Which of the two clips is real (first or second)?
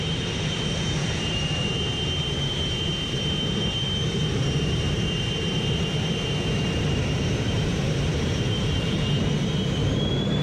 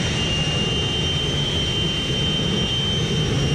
second